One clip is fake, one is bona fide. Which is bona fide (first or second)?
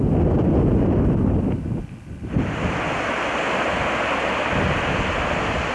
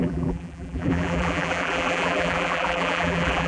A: first